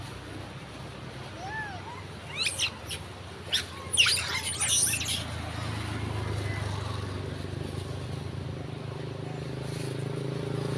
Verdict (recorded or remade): recorded